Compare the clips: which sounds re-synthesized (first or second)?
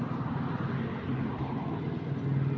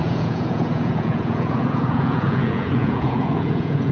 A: second